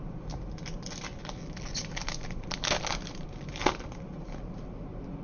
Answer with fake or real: real